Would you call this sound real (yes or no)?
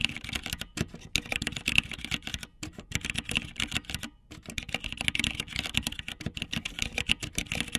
yes